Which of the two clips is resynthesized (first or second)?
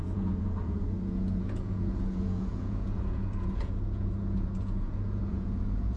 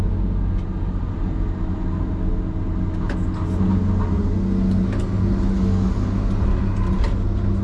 first